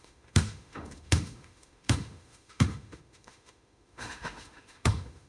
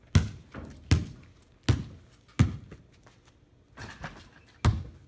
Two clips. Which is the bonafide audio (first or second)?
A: second